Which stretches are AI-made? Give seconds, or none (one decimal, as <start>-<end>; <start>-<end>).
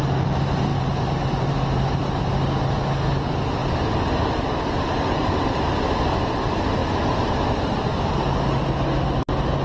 0.7-2.2